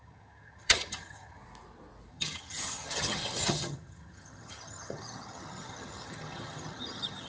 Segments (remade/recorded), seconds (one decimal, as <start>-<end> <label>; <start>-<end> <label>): 0.0-1.4 remade; 1.4-2.1 recorded; 2.1-7.3 remade